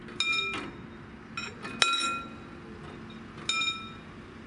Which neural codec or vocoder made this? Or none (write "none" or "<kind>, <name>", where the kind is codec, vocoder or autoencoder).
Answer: none